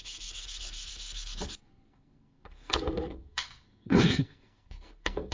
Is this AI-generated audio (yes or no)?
yes